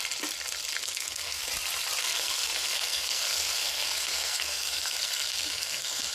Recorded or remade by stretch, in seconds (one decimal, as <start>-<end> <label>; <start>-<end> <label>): 0.0-0.8 recorded; 0.8-1.5 remade; 1.5-2.0 recorded; 2.0-6.1 remade